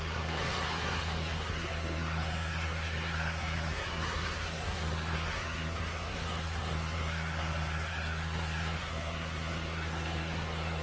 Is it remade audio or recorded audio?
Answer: remade